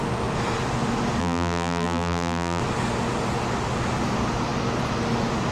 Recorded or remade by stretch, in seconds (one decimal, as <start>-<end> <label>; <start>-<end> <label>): 0.0-1.2 recorded; 1.2-2.6 remade; 2.6-5.5 recorded